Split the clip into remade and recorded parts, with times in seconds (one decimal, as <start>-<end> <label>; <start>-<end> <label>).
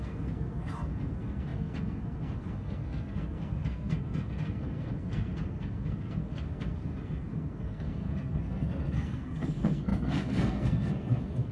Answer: 0.0-11.5 remade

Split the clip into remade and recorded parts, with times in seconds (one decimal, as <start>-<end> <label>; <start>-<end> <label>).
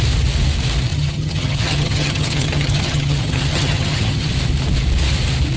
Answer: 0.0-0.9 recorded; 0.9-4.3 remade; 4.3-5.6 recorded